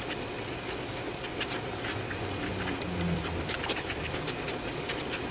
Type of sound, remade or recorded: recorded